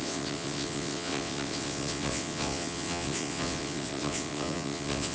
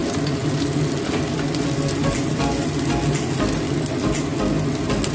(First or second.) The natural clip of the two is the second